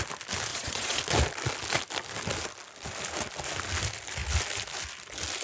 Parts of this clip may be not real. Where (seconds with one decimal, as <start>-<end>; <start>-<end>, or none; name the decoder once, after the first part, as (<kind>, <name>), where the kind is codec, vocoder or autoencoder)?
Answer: 0.5-1.0 (vocoder, Vocos)